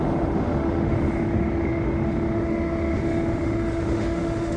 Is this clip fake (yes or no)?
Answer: yes